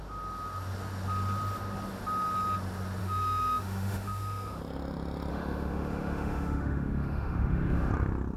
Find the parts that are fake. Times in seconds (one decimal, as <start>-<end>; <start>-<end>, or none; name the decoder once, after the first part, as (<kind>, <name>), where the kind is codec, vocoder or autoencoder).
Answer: 3.0-4.6 (autoencoder, DAC-VAE); 5.3-7.9